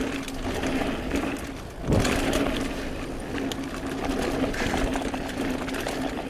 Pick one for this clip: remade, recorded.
recorded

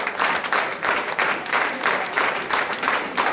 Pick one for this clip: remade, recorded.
remade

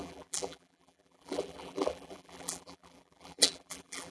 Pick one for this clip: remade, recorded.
remade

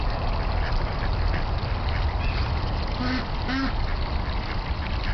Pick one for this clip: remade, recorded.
recorded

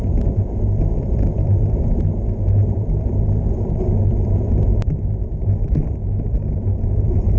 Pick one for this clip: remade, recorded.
remade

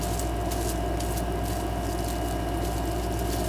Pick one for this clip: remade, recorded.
recorded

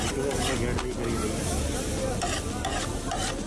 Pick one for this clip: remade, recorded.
recorded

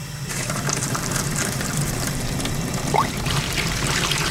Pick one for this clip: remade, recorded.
remade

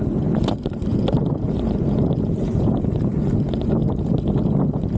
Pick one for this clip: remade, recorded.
recorded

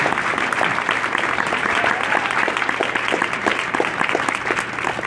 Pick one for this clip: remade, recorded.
recorded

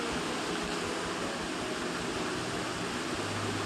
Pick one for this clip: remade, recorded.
recorded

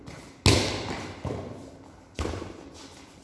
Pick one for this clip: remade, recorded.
recorded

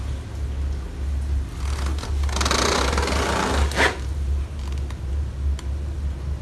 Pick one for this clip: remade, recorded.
recorded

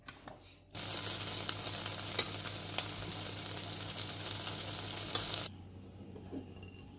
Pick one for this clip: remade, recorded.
recorded